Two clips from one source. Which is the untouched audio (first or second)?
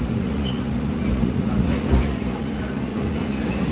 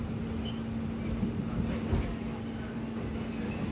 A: second